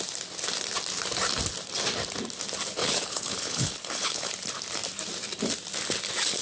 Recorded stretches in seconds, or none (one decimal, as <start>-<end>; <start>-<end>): 0.0-2.8; 4.3-6.4